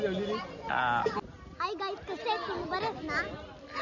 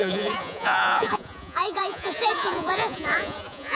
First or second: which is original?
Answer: first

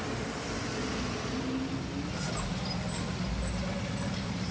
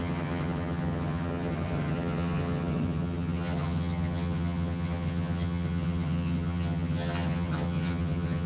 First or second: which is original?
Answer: first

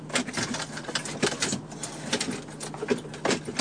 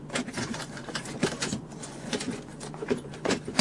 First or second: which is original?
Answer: first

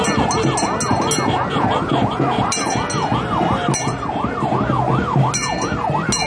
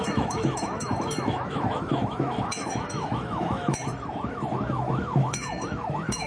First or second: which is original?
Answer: first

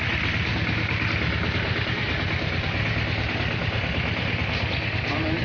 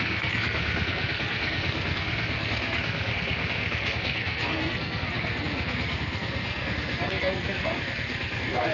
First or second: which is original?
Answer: first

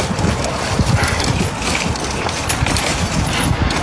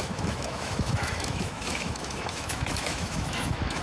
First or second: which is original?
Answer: first